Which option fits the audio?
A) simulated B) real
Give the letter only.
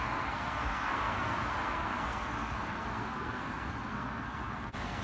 A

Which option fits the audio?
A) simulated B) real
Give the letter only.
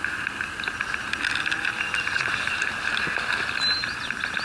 B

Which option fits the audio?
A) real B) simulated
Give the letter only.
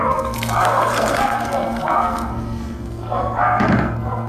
B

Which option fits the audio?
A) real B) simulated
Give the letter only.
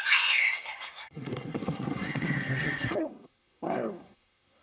B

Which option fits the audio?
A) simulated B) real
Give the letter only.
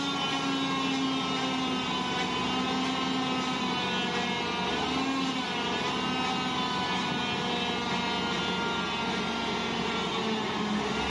B